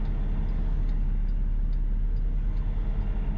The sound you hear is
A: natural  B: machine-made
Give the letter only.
A